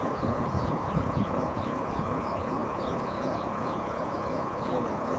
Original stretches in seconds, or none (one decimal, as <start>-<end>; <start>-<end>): none

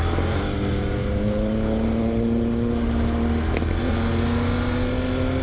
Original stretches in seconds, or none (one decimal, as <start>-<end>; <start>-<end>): 0.0-5.4

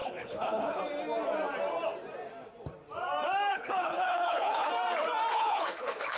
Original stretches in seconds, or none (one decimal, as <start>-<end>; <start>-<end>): 0.8-3.5; 4.7-5.3